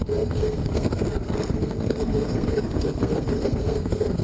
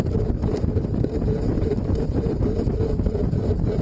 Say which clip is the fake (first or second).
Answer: first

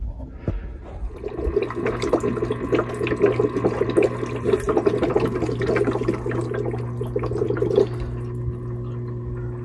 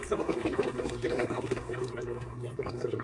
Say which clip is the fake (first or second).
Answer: second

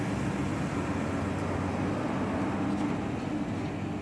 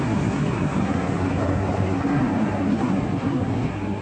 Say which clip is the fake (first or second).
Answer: second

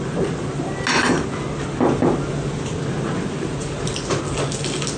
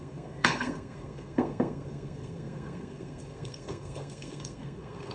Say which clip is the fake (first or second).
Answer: second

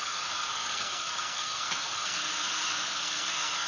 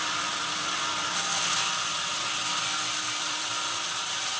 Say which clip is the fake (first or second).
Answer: first